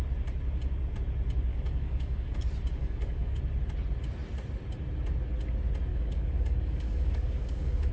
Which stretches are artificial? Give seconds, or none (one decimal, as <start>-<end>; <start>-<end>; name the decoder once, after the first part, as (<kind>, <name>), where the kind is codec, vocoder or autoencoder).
1.5-2.4 (codec, DAC); 2.8-3.4; 5.9-7.9